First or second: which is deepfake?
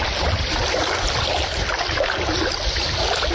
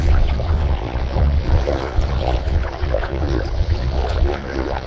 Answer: second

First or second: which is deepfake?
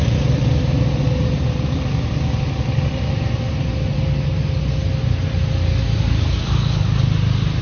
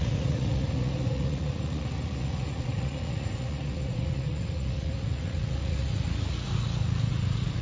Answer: second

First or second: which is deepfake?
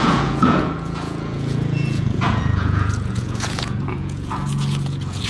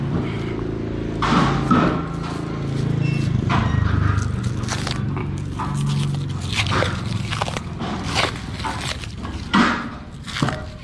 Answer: first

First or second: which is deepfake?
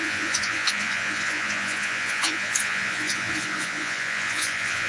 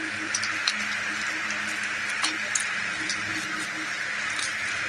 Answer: first